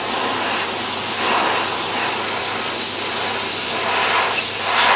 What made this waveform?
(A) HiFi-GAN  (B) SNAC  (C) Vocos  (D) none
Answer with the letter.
D